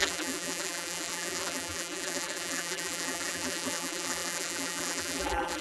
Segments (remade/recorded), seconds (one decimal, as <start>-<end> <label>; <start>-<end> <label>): 0.0-5.6 remade